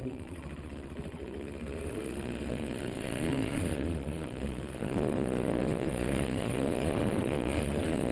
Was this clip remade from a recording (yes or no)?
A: yes